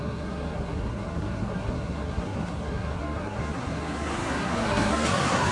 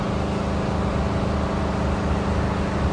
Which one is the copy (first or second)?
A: first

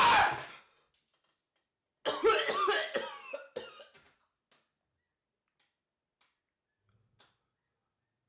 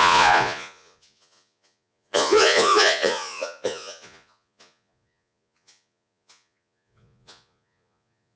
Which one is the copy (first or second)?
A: second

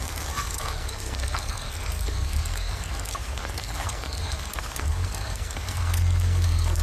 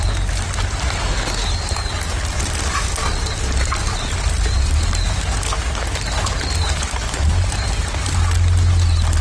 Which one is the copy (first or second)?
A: first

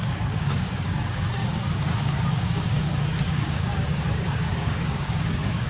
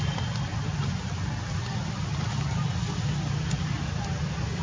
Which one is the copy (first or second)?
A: first